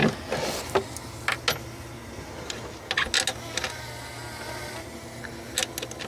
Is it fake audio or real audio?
real